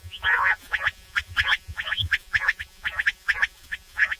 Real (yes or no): no